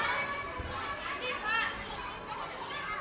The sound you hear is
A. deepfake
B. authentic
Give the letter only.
B